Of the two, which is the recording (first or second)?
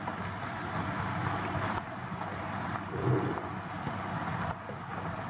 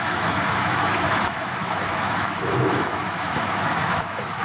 first